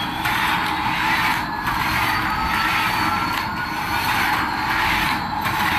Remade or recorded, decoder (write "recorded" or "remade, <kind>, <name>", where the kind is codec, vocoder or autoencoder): recorded